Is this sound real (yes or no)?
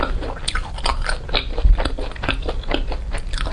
yes